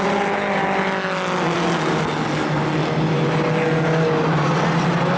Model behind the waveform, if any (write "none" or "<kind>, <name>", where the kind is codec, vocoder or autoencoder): none